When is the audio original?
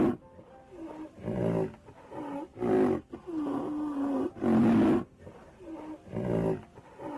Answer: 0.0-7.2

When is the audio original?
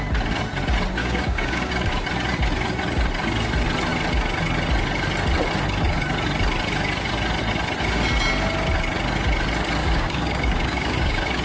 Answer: 0.0-1.0; 1.9-9.8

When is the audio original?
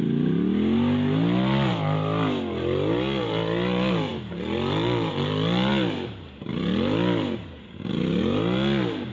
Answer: 0.0-9.1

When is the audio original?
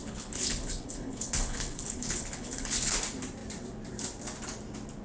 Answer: 3.0-5.0